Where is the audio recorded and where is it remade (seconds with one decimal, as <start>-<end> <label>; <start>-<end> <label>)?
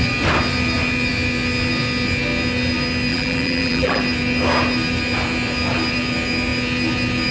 0.0-3.1 recorded; 3.1-4.0 remade; 4.0-7.3 recorded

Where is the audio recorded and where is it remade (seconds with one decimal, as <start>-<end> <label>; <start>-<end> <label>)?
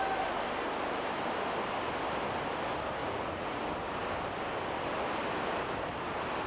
0.0-3.0 recorded; 3.0-3.6 remade; 3.6-6.5 recorded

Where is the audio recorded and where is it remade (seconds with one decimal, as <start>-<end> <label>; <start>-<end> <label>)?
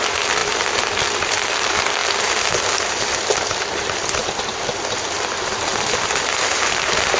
0.0-2.0 remade; 2.0-3.0 recorded; 3.0-7.2 remade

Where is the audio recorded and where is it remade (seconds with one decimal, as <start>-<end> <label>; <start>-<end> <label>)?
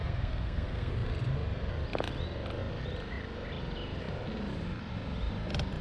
0.0-0.9 remade; 0.9-5.8 recorded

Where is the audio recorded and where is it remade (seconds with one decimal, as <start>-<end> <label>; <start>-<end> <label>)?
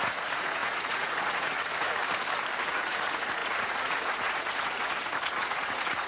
0.0-2.0 remade; 2.0-2.6 recorded; 2.6-6.1 remade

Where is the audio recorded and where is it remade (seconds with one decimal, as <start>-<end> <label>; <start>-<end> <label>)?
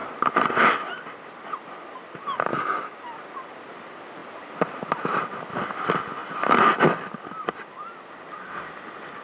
0.0-2.5 recorded; 2.5-3.0 remade; 3.0-9.2 recorded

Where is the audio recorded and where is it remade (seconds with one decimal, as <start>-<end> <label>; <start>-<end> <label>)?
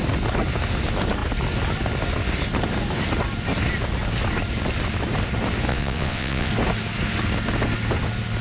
0.0-5.7 recorded; 5.7-6.5 remade; 6.5-8.4 recorded